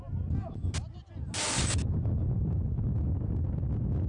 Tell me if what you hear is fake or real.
real